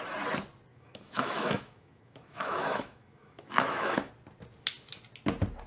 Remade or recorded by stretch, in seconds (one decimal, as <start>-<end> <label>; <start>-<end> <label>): 0.0-0.7 recorded; 0.7-4.1 remade; 4.1-5.7 recorded